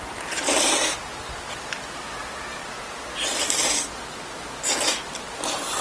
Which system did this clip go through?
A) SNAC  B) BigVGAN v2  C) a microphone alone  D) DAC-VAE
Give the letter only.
C